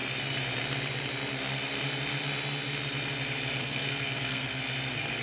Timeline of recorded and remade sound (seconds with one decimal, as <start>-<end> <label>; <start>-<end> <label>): 0.0-3.6 recorded; 3.6-4.6 remade; 4.6-5.2 recorded